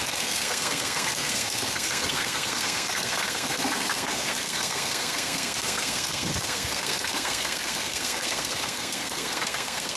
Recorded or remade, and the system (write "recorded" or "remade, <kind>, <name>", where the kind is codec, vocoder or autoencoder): remade, codec, SNAC